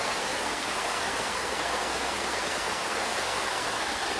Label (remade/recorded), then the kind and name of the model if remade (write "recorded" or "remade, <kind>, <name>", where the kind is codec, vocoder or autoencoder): remade, codec, SNAC